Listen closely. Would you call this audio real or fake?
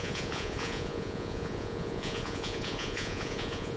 fake